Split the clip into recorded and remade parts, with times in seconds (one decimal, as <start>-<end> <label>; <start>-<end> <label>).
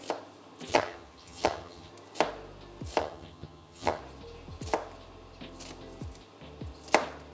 0.0-0.7 recorded; 0.7-1.9 remade; 1.9-3.0 recorded; 3.0-4.0 remade; 4.0-7.3 recorded